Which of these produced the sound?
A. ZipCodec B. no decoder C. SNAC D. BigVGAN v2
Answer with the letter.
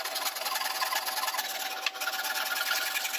B